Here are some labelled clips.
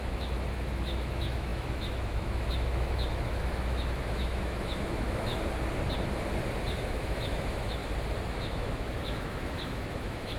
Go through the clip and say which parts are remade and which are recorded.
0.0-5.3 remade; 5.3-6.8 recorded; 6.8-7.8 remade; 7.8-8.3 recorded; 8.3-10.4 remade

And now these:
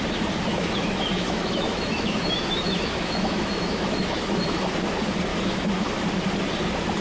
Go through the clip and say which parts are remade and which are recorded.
0.0-0.5 recorded; 0.5-4.7 remade; 4.7-5.3 recorded; 5.3-5.9 remade; 5.9-7.0 recorded

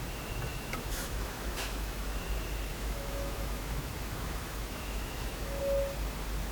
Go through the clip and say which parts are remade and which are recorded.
0.0-0.5 recorded; 0.5-2.2 remade; 2.2-2.7 recorded; 2.7-5.6 remade; 5.6-6.5 recorded

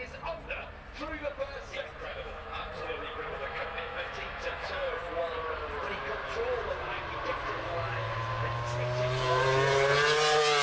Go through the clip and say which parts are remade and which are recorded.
0.0-2.1 recorded; 2.1-2.7 remade; 2.7-3.4 recorded; 3.4-4.9 remade; 4.9-10.6 recorded

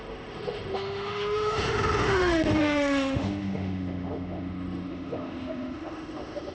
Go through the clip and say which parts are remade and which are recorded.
0.0-6.5 remade

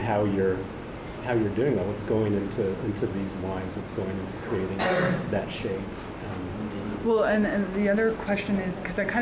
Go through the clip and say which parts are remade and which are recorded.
0.0-9.2 recorded